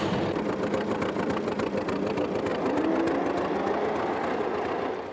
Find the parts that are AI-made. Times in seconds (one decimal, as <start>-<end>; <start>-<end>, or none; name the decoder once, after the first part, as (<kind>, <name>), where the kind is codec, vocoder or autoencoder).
0.0-1.5 (vocoder, BigVGAN v2); 2.1-2.5